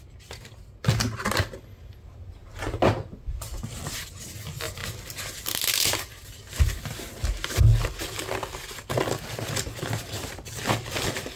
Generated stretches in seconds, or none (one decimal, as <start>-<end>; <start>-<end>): none